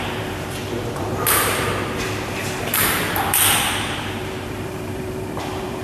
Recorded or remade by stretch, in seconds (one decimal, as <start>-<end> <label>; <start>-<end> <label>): 0.0-0.6 remade; 0.6-1.1 recorded; 1.1-5.8 remade